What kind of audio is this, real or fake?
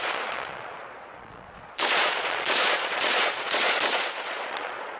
fake